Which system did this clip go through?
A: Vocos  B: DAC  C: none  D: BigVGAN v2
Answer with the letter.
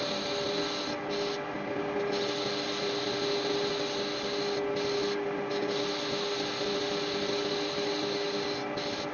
C